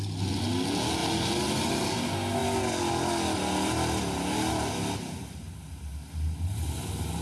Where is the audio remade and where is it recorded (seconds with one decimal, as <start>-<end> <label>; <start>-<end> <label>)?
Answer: 0.0-7.2 recorded